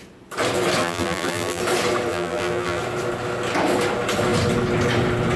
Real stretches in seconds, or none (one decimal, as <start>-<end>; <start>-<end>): 0.0-0.8; 1.6-2.1; 2.8-5.4